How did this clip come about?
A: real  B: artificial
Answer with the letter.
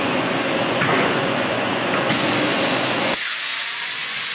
B